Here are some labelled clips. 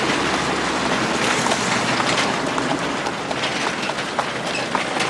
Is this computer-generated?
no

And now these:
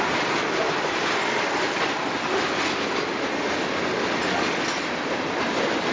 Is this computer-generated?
no